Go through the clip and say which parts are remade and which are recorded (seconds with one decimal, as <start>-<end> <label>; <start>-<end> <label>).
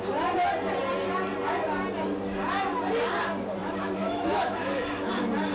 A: 0.0-3.6 recorded; 3.6-5.1 remade; 5.1-5.5 recorded